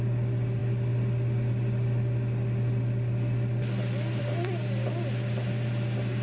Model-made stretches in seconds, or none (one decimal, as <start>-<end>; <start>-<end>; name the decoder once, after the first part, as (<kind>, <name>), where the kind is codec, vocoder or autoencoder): none